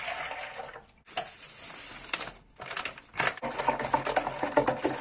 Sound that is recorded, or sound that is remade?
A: recorded